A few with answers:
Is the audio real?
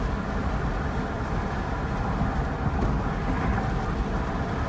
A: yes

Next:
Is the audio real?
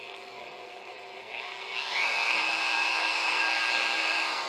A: no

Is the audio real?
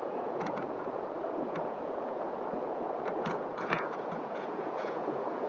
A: no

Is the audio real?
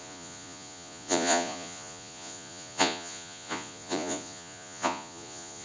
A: no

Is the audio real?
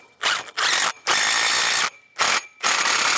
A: yes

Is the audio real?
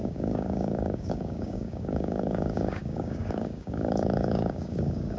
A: no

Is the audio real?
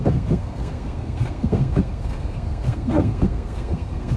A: no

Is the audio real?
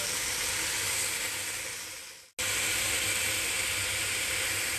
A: yes